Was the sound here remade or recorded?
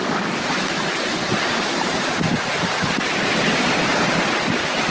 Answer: recorded